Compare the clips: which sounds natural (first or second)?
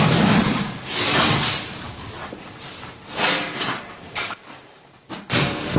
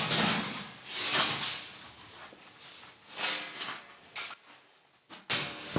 second